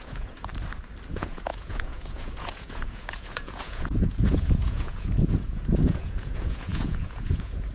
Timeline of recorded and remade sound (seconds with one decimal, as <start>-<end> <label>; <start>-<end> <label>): 0.0-0.5 remade; 0.5-1.1 recorded; 1.1-7.7 remade